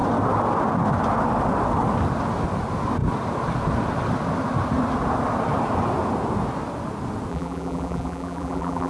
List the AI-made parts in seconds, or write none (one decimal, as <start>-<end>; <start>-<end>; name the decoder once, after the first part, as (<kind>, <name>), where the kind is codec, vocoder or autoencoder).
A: 7.3-8.9 (vocoder, BigVGAN v2)